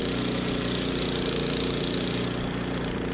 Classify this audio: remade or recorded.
recorded